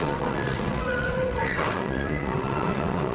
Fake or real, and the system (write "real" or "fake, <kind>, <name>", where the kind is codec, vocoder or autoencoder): fake, vocoder, WaveNeXt